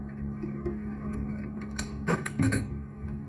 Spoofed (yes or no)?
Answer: yes